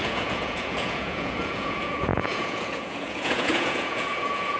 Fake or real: fake